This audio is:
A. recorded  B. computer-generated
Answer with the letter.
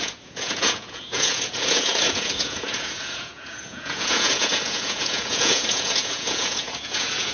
B